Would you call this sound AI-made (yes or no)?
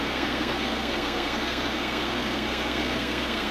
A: yes